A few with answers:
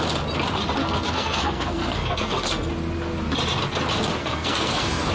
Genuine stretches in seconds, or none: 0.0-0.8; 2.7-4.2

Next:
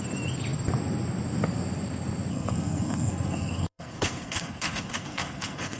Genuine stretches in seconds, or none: 0.0-2.3

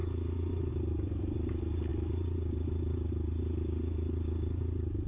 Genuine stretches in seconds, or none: 0.0-5.1

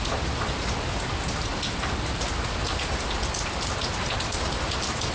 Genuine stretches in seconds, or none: 0.0-5.1